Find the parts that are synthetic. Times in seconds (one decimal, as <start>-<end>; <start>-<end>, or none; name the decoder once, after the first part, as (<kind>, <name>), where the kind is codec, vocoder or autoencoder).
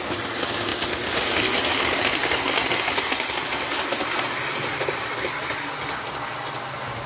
none